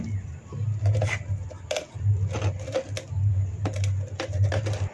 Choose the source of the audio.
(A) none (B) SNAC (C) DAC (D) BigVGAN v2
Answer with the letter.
A